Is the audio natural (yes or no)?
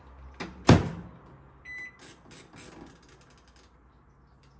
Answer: yes